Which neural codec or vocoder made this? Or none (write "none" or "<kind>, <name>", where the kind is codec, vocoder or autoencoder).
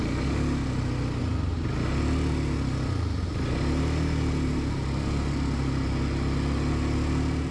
none